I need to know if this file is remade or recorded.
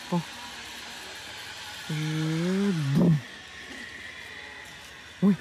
recorded